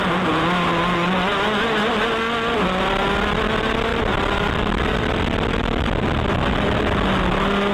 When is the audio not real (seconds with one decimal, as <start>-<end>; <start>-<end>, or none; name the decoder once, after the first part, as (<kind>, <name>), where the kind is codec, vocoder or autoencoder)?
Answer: 3.9-6.0 (vocoder, BigVGAN v2)

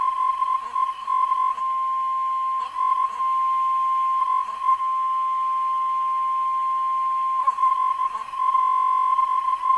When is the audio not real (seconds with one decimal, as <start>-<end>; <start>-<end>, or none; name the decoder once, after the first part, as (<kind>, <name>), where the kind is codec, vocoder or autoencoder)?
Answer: 0.0-1.6 (codec, SNAC); 2.6-3.2; 4.2-4.8; 7.4-9.8

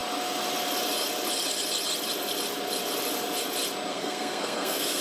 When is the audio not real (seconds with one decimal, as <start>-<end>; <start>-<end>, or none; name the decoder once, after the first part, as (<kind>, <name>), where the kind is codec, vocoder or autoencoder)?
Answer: 3.9-5.0 (codec, SNAC)

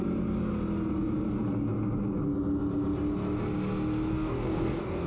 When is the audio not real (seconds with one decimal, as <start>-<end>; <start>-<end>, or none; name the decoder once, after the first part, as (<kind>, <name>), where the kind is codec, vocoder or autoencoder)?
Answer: 4.1-5.1 (codec, DAC)